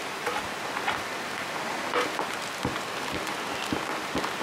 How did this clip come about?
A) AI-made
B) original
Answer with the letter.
A